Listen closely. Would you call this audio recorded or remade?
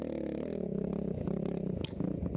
recorded